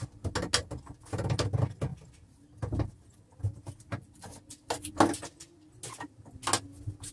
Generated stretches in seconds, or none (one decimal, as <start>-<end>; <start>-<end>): none